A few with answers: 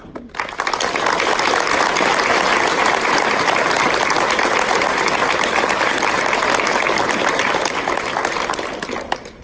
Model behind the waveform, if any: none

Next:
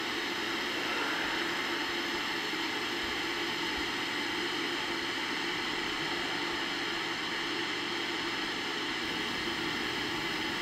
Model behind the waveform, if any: none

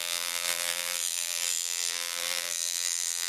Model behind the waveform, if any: vocoder, BigVGAN v2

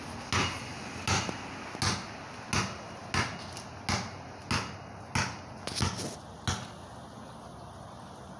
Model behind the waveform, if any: none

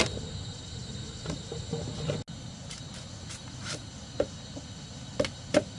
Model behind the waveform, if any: none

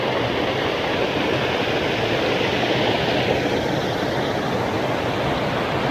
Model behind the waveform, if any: none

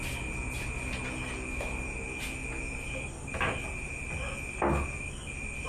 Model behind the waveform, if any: none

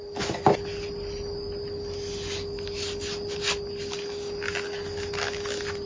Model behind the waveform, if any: none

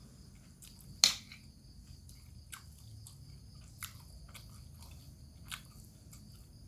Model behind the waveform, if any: none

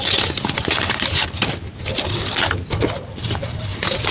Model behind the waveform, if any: none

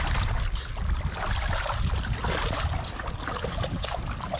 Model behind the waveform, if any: none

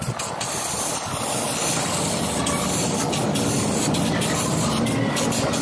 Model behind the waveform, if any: none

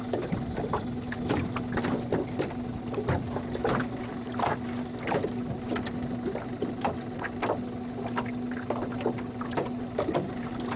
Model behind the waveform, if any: none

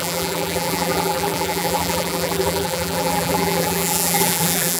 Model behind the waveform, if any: vocoder, BigVGAN v2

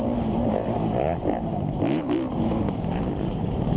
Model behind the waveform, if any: vocoder, BigVGAN v2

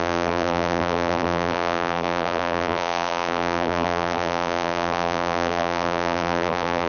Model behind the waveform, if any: vocoder, BigVGAN v2